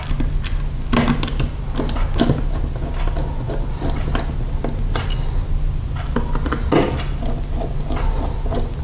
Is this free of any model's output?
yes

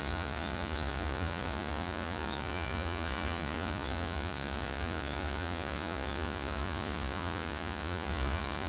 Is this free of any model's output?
no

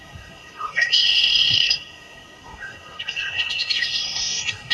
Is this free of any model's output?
no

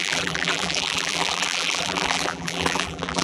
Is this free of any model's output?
no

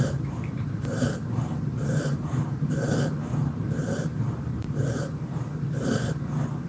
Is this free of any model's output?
no